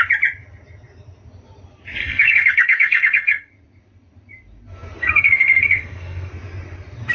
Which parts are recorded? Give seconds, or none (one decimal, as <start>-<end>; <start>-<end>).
0.0-2.0; 3.5-5.0; 6.3-7.1